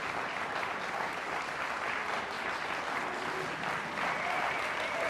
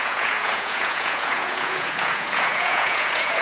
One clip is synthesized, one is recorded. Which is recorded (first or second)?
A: first